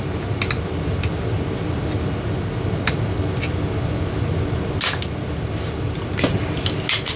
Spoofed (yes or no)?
no